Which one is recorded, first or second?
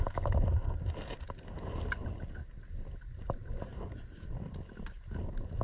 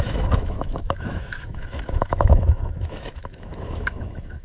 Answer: first